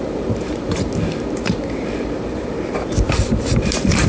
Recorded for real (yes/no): no